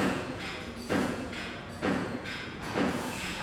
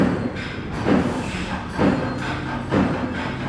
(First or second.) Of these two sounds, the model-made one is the first